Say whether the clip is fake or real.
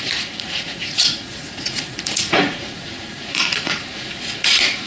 fake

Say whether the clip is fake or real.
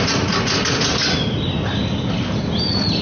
real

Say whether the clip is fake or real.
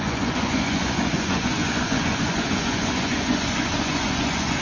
fake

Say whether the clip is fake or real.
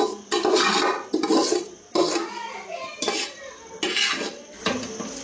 real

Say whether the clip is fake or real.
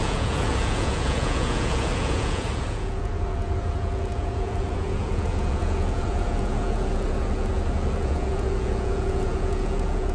fake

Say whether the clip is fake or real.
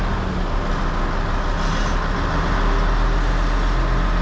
real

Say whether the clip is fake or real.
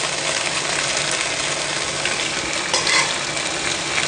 real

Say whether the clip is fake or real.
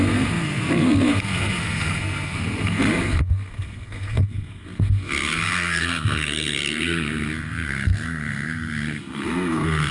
fake